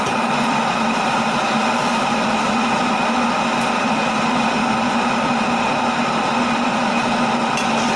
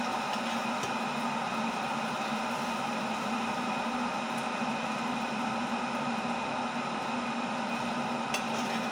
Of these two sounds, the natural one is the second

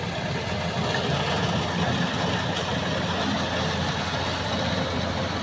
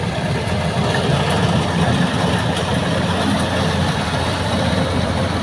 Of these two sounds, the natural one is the first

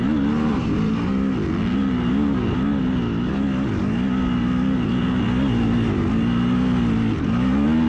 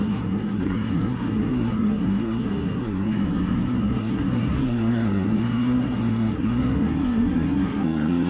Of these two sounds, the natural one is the first